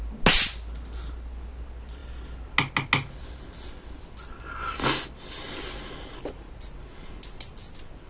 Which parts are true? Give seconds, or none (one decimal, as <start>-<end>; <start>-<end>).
0.0-8.1